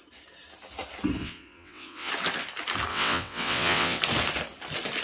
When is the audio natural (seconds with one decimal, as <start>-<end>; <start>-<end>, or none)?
0.0-1.2; 2.1-2.9; 4.0-5.0